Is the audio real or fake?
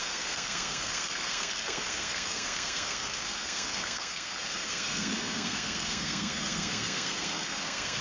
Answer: fake